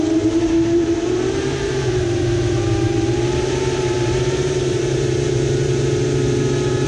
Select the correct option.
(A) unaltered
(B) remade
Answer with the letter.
B